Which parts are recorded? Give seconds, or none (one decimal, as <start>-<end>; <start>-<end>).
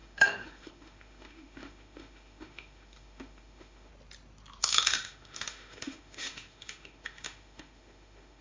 3.9-4.6